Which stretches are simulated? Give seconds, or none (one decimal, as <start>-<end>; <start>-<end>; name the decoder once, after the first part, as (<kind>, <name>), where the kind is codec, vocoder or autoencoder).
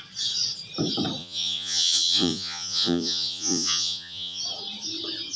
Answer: 1.2-4.4 (vocoder, Vocos)